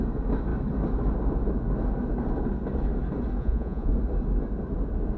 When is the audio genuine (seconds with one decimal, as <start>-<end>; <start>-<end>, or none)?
0.0-3.4; 3.9-5.2